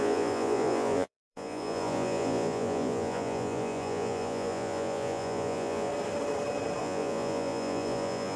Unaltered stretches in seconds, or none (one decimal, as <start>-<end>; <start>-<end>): 5.9-6.8